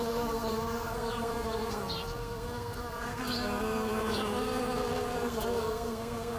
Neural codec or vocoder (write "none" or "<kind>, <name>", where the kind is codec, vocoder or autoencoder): codec, SNAC